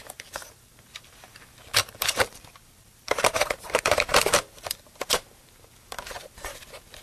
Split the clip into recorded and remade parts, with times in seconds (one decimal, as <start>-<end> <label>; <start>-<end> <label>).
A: 0.0-7.0 remade